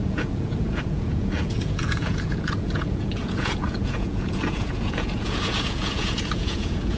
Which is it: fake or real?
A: fake